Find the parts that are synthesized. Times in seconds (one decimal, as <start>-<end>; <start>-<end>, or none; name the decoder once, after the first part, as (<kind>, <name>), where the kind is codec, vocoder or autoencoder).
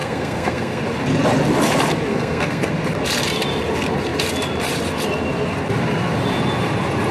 0.0-0.8 (codec, SNAC); 2.1-2.7